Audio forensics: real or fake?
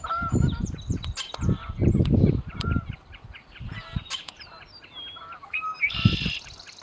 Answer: fake